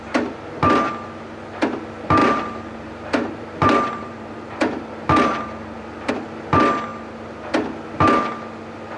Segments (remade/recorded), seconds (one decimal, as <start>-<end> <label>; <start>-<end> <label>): 0.0-2.2 recorded; 2.2-6.1 remade; 6.1-9.0 recorded